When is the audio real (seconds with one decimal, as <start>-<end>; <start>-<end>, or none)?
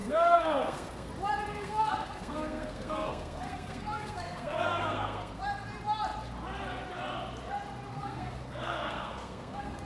1.1-1.5; 5.4-7.9